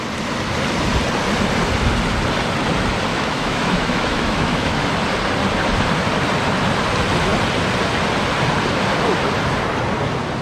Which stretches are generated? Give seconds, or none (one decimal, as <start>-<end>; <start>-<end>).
3.1-4.9